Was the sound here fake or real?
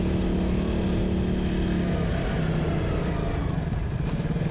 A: real